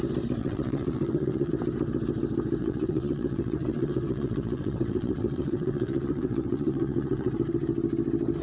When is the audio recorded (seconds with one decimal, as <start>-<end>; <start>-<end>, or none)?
0.0-0.4; 1.5-2.6; 7.3-8.4

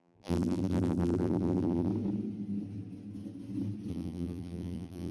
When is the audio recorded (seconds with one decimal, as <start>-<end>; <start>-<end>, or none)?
1.9-3.9